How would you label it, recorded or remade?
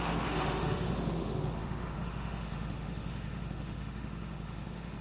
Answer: remade